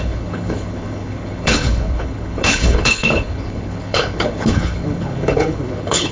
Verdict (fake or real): fake